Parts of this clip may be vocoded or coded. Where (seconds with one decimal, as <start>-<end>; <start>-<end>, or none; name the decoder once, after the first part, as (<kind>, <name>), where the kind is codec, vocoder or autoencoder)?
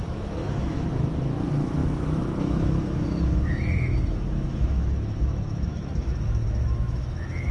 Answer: 0.0-7.5 (autoencoder, DAC-VAE)